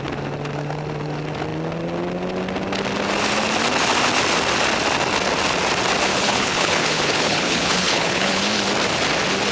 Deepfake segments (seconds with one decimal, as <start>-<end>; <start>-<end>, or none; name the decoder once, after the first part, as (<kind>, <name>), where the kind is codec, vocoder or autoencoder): 6.1-8.4 (codec, HILCodec)